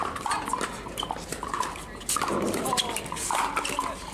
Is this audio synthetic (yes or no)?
no